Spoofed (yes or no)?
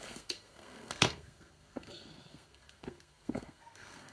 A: yes